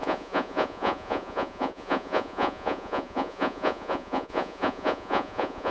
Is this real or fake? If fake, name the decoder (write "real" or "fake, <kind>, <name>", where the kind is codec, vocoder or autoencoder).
fake, vocoder, Vocos